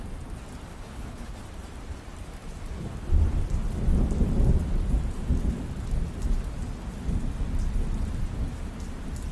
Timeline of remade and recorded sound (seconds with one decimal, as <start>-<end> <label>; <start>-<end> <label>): 0.0-0.7 recorded; 0.7-1.4 remade; 1.4-9.3 recorded

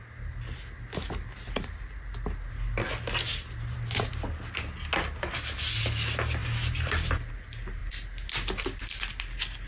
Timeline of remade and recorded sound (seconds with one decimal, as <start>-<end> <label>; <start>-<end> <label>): 0.0-9.7 recorded